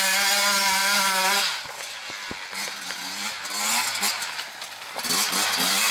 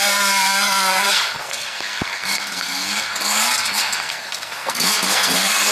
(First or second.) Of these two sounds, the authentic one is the first